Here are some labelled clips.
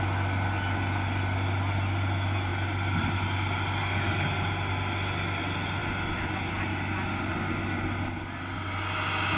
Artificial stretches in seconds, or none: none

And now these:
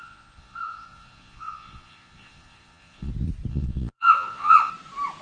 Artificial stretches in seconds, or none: 0.0-3.1; 3.5-4.7

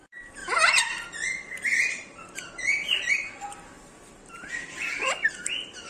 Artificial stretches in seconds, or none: 0.4-3.1

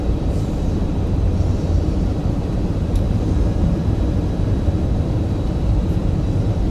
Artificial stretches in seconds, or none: 0.0-6.7